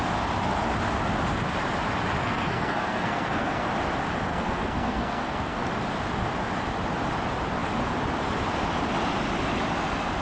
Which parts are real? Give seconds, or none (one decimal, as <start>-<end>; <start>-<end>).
0.0-2.2; 3.7-4.3; 5.6-10.2